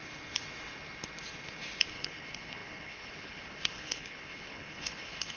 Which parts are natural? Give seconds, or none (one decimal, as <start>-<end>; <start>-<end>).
0.0-1.9